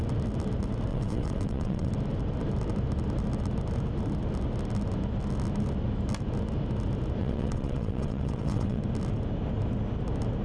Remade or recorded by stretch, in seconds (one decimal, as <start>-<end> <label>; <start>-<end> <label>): 0.0-0.9 recorded; 0.9-1.9 remade; 1.9-7.2 recorded; 7.2-8.8 remade; 8.8-10.4 recorded